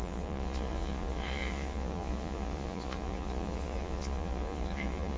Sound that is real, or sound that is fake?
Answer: fake